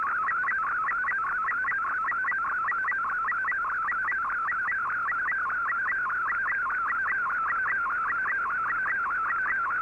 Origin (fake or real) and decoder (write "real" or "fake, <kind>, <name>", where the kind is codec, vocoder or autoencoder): real